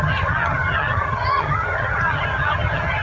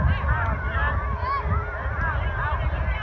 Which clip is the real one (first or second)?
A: second